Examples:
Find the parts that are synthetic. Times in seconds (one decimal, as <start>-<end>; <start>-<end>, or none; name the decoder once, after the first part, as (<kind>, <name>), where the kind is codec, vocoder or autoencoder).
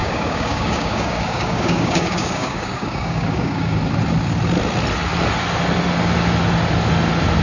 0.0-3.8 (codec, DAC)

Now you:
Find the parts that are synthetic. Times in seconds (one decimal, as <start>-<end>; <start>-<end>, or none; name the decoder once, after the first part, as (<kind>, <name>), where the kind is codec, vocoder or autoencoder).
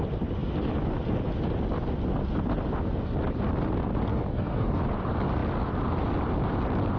4.1-4.8 (codec, DAC)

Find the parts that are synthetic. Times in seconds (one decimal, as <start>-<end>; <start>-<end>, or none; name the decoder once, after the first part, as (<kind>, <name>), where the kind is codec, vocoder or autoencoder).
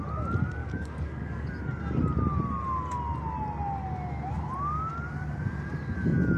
0.6-1.5 (codec, DAC)